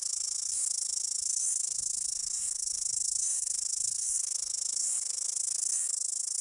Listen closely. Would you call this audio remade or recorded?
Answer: remade